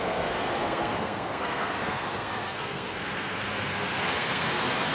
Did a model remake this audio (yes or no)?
yes